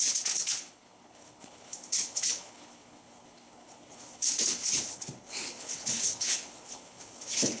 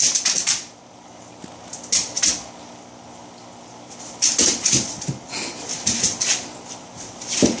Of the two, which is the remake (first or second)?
first